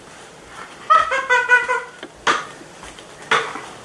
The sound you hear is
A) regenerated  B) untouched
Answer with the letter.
B